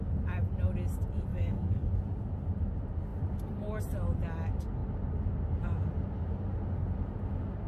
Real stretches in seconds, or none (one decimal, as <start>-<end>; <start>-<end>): 0.0-1.3; 1.9-7.7